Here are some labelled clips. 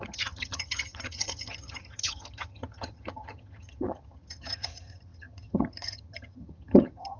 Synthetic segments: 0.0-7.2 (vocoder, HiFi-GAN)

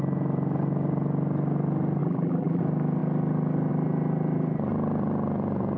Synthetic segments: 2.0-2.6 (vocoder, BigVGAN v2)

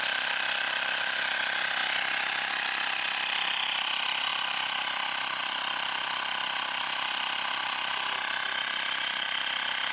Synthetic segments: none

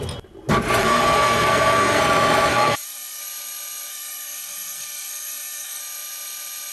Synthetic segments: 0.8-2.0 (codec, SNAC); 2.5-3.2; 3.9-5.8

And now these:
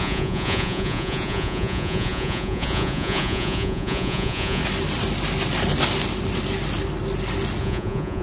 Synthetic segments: 0.0-4.6 (vocoder, Vocos); 7.6-8.2